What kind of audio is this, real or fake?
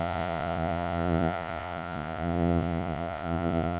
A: fake